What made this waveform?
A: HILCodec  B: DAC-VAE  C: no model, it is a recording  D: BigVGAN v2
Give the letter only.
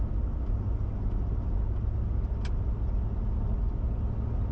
C